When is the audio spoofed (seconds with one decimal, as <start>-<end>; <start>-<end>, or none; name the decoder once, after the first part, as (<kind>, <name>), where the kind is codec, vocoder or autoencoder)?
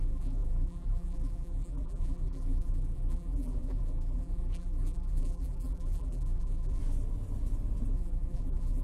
0.0-6.8 (vocoder, BigVGAN v2); 7.9-8.8